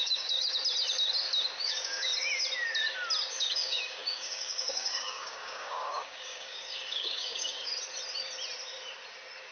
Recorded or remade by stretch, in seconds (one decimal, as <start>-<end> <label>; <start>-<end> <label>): 0.0-0.5 remade; 0.5-1.6 recorded; 1.6-2.1 remade; 2.1-3.3 recorded; 3.3-7.7 remade; 7.7-9.5 recorded

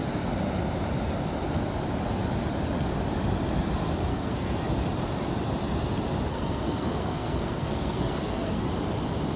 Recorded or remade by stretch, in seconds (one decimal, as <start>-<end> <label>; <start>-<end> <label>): 0.0-4.1 recorded; 4.1-4.6 remade; 4.6-6.3 recorded; 6.3-8.7 remade; 8.7-9.4 recorded

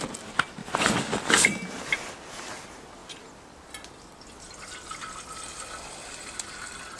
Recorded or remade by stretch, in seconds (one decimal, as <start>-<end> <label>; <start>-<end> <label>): 0.0-7.0 recorded

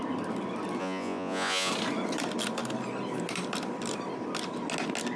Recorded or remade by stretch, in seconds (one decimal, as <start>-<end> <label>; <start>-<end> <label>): 0.0-0.8 recorded; 0.8-1.7 remade; 1.7-5.2 recorded

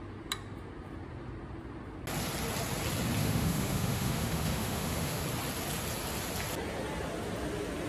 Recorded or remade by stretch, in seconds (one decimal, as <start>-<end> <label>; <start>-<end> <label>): 0.0-3.2 recorded; 3.2-5.2 remade; 5.2-7.9 recorded